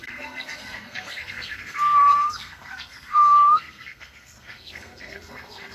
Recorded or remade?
remade